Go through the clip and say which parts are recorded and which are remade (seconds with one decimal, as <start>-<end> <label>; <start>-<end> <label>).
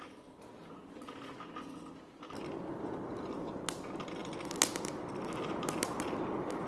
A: 0.0-6.7 recorded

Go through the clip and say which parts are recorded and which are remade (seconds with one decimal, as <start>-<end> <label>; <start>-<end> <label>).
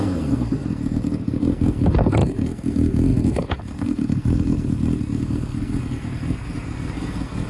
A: 0.0-7.5 remade